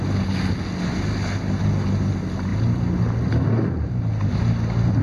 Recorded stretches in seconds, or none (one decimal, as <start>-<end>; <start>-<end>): 0.0-5.0